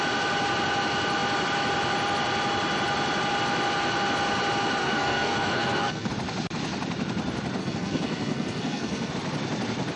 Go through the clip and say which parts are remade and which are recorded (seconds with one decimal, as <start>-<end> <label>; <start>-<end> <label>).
0.0-4.8 recorded; 4.8-6.1 remade; 6.1-7.6 recorded; 7.6-9.1 remade; 9.1-10.0 recorded